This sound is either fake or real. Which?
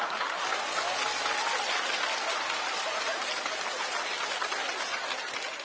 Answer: real